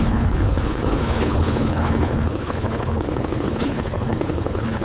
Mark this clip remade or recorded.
remade